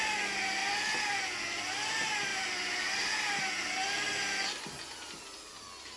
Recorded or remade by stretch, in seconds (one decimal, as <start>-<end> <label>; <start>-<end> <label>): 0.0-2.3 recorded; 2.3-3.7 remade; 3.7-6.0 recorded

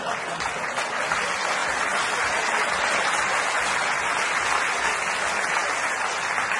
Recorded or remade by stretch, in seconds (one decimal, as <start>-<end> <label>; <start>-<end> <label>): 0.0-6.6 recorded

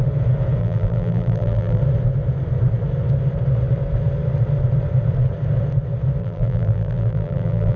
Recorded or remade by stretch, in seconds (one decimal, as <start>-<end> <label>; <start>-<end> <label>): 0.0-0.6 recorded; 0.6-1.8 remade; 1.8-6.2 recorded; 6.2-7.8 remade